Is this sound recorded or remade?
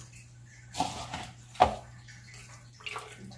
recorded